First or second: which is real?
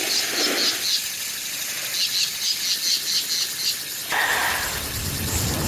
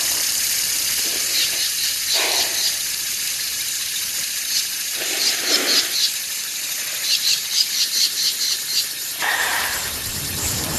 first